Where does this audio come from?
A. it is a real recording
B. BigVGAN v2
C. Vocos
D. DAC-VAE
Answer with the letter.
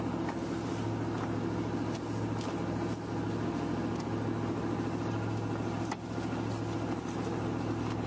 A